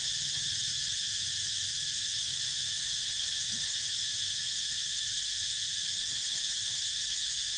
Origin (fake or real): fake